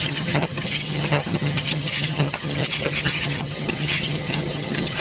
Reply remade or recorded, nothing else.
remade